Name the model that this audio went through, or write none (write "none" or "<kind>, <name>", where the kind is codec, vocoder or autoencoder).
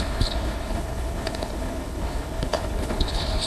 codec, HILCodec